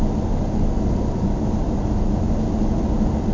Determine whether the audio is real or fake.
real